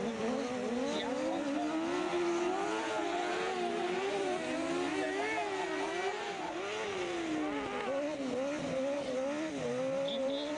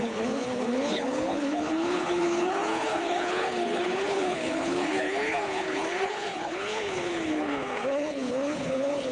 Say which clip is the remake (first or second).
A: second